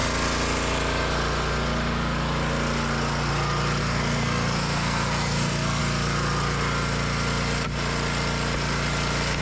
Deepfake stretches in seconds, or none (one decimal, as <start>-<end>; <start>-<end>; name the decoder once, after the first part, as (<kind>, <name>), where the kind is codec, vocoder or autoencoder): 3.8-5.8 (codec, SNAC)